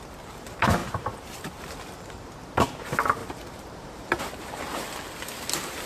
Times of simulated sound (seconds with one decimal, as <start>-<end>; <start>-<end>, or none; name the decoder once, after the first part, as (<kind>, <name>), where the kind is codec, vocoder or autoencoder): 3.2-4.2 (vocoder, BigVGAN v2)